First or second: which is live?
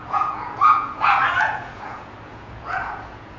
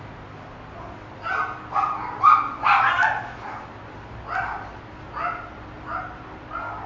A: second